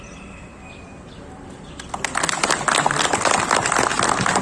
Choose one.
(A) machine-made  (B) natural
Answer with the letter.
B